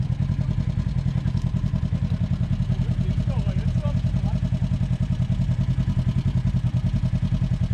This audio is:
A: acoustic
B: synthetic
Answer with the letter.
A